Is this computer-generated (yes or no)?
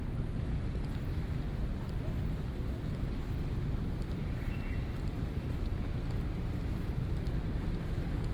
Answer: no